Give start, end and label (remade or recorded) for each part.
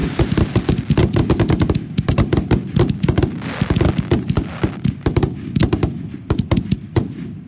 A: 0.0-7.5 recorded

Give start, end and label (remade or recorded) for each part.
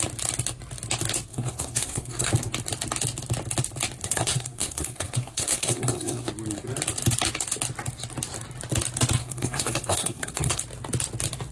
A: 0.0-1.3 recorded; 1.3-2.3 remade; 2.3-4.0 recorded; 4.0-6.3 remade; 6.3-9.2 recorded; 9.2-10.6 remade; 10.6-11.5 recorded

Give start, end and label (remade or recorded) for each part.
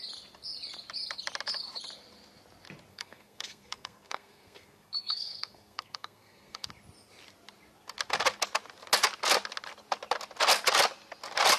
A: 0.0-2.9 recorded; 2.9-6.7 remade; 6.7-11.6 recorded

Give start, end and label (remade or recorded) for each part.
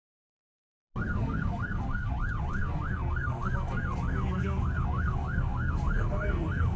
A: 0.0-1.1 recorded; 1.1-2.1 remade; 2.1-2.6 recorded; 2.6-6.8 remade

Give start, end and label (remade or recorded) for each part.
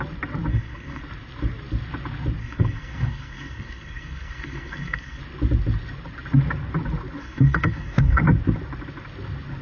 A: 0.0-0.5 recorded; 0.5-1.0 remade; 1.0-2.4 recorded; 2.4-5.2 remade; 5.2-7.2 recorded; 7.2-8.2 remade; 8.2-9.6 recorded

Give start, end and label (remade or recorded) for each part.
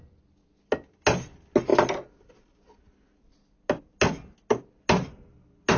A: 0.0-5.8 recorded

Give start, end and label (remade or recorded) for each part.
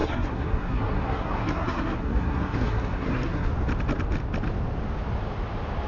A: 0.0-3.5 remade; 3.5-5.9 recorded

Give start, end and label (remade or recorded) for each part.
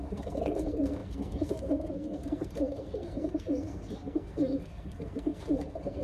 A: 0.0-6.0 remade